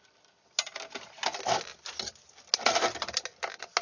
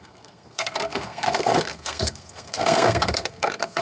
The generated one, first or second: second